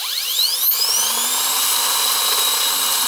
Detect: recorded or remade recorded